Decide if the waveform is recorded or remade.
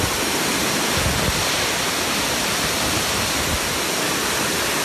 recorded